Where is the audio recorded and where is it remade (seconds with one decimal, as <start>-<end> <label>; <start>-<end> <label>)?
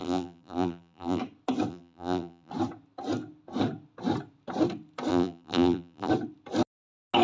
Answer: 0.0-1.2 remade; 1.2-1.7 recorded; 1.7-2.5 remade; 2.5-5.1 recorded; 5.1-6.1 remade; 6.1-7.2 recorded